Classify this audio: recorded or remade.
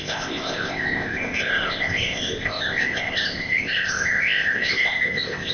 remade